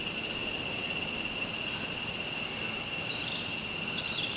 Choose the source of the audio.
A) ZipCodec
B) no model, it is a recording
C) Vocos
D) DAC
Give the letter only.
B